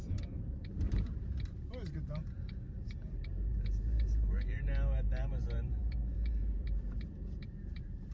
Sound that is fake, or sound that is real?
fake